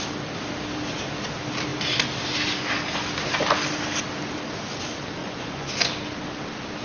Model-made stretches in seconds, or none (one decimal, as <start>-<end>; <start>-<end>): 5.2-5.7